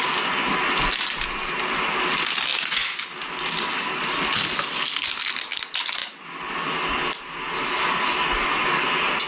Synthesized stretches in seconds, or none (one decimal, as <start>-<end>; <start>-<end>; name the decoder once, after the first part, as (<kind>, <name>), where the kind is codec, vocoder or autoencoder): none